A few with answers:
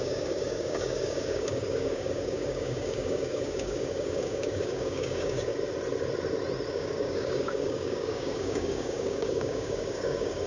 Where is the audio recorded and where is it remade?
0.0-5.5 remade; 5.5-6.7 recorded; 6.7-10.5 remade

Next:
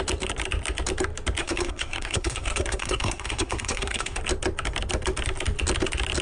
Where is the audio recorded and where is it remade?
0.0-1.4 recorded; 1.4-4.2 remade; 4.2-6.2 recorded

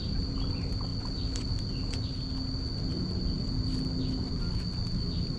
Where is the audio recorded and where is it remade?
0.0-5.4 recorded

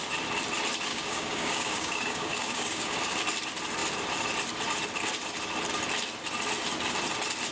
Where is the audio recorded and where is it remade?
0.0-0.9 recorded; 0.9-3.0 remade; 3.0-7.5 recorded

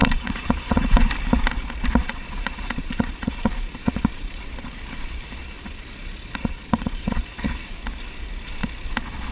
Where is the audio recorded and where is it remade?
0.0-1.1 remade; 1.1-2.0 recorded; 2.0-4.4 remade; 4.4-5.4 recorded; 5.4-7.7 remade; 7.7-9.3 recorded

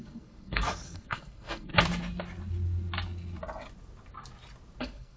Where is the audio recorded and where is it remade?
0.0-1.7 remade; 1.7-4.8 recorded; 4.8-5.2 remade